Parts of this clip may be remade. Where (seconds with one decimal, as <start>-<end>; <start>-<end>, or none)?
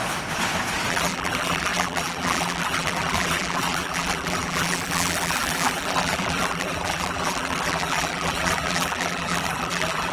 0.9-10.1